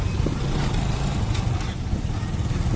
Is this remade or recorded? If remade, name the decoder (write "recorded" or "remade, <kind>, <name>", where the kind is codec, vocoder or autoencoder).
recorded